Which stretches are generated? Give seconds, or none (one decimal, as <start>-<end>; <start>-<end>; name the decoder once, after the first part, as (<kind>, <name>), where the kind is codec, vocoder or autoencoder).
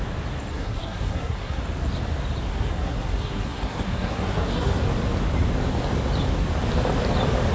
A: 0.5-1.6 (codec, SNAC); 2.5-4.8